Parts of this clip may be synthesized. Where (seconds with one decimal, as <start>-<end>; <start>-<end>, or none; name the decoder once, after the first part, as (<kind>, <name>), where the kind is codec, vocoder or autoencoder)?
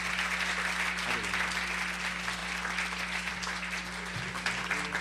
none